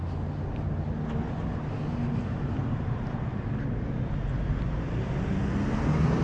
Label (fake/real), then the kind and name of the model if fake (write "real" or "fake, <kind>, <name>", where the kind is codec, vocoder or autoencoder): real